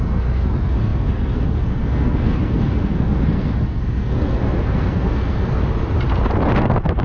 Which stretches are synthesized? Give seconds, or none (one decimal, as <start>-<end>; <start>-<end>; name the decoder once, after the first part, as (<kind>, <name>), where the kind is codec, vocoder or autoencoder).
0.0-5.6 (codec, SNAC); 6.6-7.0